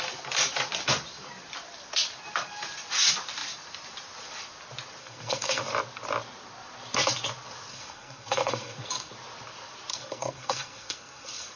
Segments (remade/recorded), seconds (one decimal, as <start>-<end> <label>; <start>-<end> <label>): 0.0-5.0 recorded; 5.0-5.6 remade; 5.6-7.7 recorded; 7.7-9.1 remade; 9.1-9.9 recorded; 9.9-11.6 remade